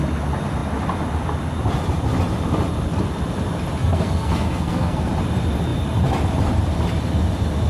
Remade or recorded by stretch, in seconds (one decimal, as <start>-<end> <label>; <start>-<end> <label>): 0.0-3.8 recorded; 3.8-5.1 remade; 5.1-7.7 recorded